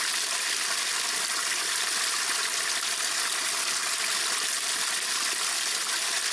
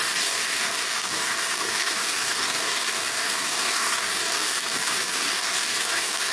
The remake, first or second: second